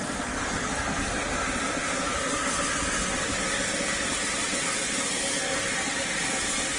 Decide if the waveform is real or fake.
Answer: real